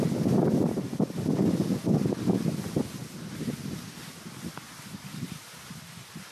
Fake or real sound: real